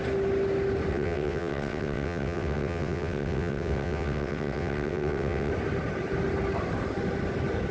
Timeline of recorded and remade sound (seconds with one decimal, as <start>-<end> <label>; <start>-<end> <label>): 0.0-0.9 recorded; 0.9-5.5 remade; 5.5-7.7 recorded